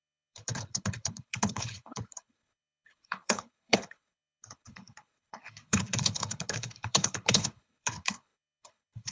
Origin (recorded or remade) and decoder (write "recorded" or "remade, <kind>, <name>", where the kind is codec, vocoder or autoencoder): remade, codec, HILCodec